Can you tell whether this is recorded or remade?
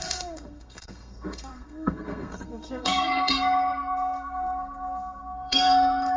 remade